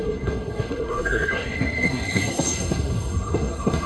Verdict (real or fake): fake